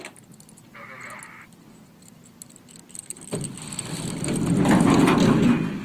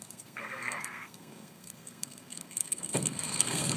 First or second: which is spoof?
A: second